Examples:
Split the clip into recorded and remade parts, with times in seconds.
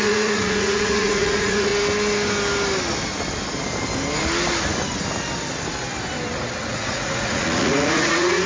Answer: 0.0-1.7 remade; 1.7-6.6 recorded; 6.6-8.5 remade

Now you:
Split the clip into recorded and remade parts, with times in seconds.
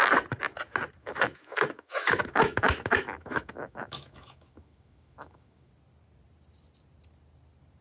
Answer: 0.0-1.0 recorded; 1.0-5.7 remade; 5.7-7.8 recorded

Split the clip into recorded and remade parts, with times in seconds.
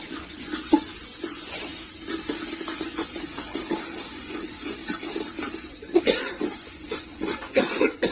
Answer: 0.0-1.7 remade; 1.7-2.8 recorded; 2.8-4.8 remade; 4.8-5.6 recorded; 5.6-8.1 remade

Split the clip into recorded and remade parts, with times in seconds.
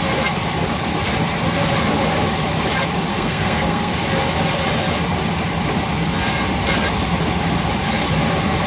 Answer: 0.0-3.1 recorded; 3.1-3.9 remade; 3.9-8.7 recorded